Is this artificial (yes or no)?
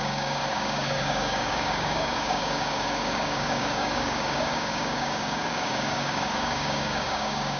yes